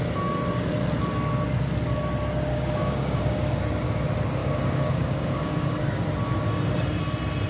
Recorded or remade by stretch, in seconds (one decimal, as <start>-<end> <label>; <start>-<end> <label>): 0.0-2.5 recorded; 2.5-3.6 remade; 3.6-4.4 recorded; 4.4-5.8 remade; 5.8-7.5 recorded